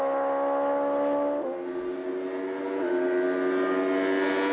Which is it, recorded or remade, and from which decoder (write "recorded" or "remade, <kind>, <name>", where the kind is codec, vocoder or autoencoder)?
recorded